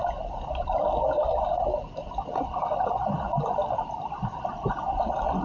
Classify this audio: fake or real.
real